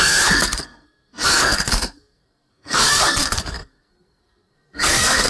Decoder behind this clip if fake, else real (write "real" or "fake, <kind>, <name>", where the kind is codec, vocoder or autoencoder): fake, codec, SNAC